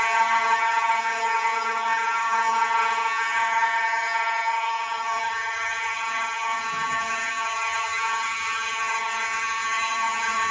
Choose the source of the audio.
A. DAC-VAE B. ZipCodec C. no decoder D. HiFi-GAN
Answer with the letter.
D